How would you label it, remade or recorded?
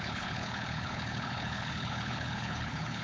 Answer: remade